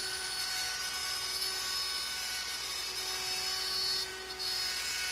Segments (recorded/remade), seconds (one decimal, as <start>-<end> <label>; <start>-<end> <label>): 0.0-0.5 remade; 0.5-5.1 recorded